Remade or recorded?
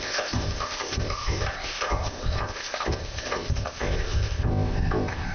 remade